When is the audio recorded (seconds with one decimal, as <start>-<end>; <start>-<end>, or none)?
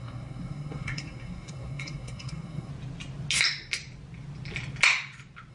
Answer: 2.7-5.5